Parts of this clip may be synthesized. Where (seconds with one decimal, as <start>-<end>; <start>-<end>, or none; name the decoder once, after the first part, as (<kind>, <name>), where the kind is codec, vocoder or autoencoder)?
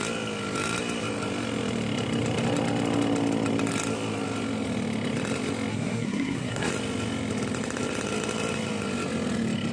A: 5.7-6.7 (codec, SNAC)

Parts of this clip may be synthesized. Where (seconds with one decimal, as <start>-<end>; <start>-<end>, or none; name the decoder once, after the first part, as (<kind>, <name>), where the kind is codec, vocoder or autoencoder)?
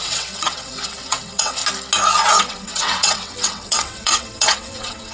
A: 0.0-1.6 (vocoder, WaveNeXt); 2.4-5.1